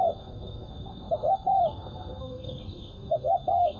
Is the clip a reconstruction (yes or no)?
yes